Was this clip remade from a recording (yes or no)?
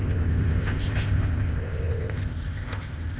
yes